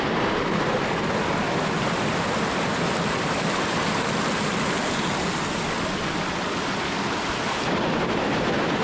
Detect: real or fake real